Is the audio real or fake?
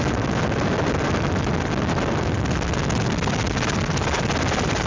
real